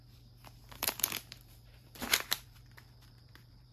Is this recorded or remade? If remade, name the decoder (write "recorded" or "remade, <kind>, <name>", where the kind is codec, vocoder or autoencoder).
remade, vocoder, BigVGAN v2